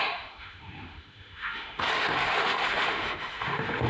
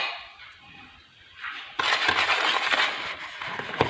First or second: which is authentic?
second